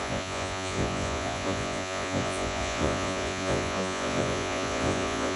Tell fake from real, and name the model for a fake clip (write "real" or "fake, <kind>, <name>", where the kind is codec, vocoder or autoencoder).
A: fake, vocoder, Vocos